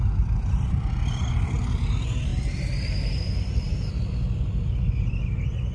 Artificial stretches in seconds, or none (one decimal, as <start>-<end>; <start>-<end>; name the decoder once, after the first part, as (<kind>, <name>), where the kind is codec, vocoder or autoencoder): none